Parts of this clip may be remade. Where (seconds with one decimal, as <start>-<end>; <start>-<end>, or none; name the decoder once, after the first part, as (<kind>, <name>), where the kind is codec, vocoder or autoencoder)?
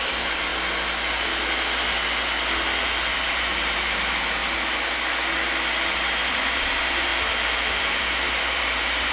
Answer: 0.0-0.5 (vocoder, BigVGAN v2); 3.1-4.4; 6.3-7.1; 7.7-9.1